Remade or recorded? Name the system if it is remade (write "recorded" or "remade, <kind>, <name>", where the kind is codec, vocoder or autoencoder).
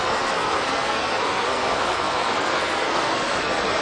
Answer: remade, codec, SNAC